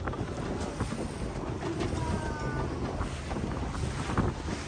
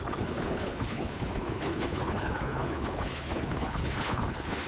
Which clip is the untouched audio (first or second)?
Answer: first